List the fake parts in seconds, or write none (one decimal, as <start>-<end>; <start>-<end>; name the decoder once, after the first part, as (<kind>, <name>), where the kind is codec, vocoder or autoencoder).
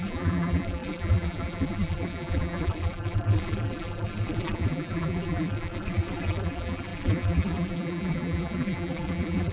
0.0-9.5 (vocoder, BigVGAN v2)